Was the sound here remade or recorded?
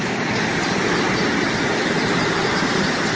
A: recorded